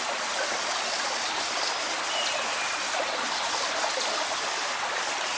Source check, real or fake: real